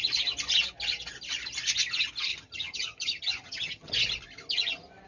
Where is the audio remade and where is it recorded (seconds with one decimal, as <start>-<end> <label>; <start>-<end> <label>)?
0.0-2.3 recorded; 2.3-3.9 remade; 3.9-5.1 recorded